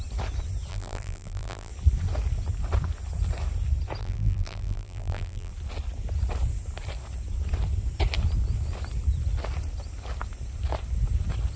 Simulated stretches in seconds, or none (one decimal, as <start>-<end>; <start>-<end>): 0.7-1.7; 4.0-5.5